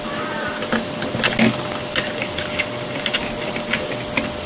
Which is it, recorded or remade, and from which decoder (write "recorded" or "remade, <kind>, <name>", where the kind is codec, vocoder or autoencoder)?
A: recorded